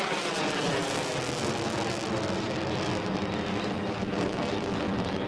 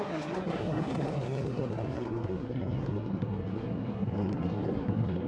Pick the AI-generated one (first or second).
second